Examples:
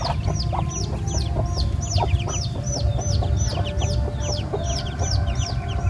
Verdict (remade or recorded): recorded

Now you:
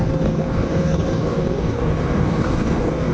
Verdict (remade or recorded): remade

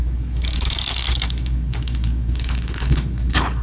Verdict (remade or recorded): remade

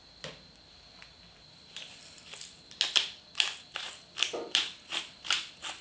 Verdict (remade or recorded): recorded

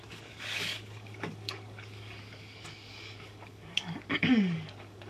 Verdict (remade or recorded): remade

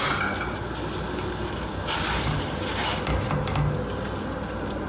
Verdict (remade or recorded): recorded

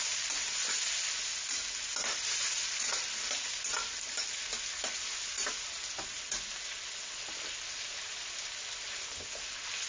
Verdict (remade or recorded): recorded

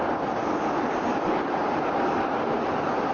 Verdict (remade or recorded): recorded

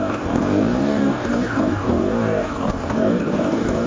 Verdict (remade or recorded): remade